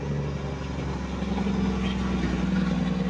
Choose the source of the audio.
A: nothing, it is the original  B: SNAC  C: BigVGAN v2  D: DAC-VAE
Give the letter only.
A